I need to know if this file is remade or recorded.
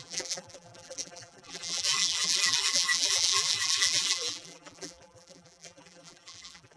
remade